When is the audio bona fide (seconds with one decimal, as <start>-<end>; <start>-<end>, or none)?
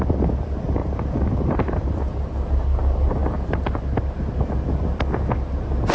0.0-5.9